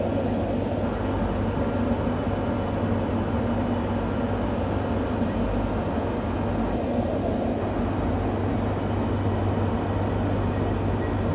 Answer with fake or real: real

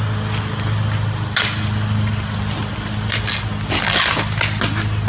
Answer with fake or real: real